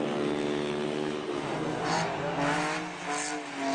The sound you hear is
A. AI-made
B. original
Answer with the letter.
B